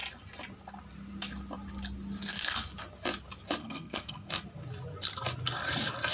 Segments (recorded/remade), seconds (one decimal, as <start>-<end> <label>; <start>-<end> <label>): 0.0-3.6 recorded; 3.6-4.3 remade; 4.3-6.1 recorded